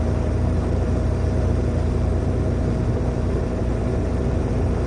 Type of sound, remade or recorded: remade